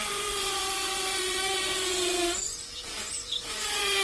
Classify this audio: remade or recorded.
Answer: remade